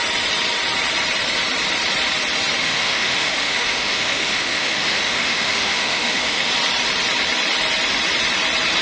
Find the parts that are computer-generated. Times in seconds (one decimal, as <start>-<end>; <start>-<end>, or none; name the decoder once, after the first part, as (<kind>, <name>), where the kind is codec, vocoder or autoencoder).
2.6-6.5 (autoencoder, DAC-VAE)